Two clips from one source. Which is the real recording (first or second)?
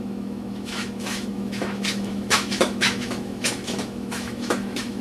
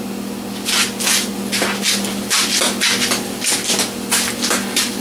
second